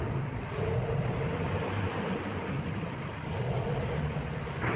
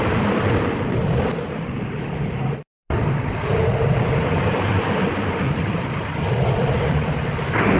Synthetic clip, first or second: second